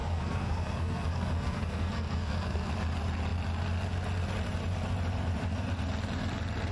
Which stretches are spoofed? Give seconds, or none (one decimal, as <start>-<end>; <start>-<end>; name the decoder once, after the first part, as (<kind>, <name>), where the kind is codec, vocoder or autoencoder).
0.0-2.7 (codec, SNAC)